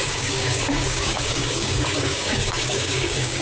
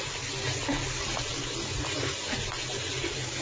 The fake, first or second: first